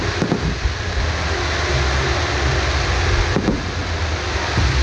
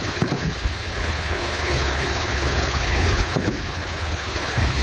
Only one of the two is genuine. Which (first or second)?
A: first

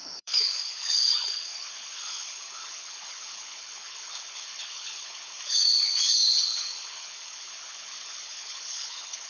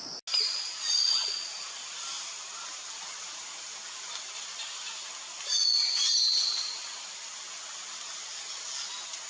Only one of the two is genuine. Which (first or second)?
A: second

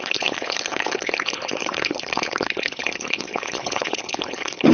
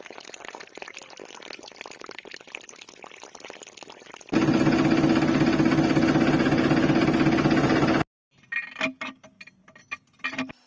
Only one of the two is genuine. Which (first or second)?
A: second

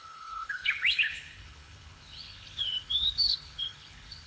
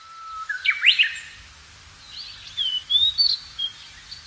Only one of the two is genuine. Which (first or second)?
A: second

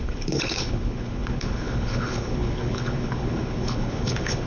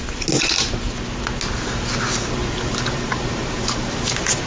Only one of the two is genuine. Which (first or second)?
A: second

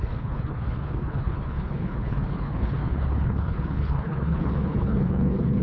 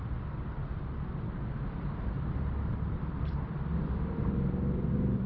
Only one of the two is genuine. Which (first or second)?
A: second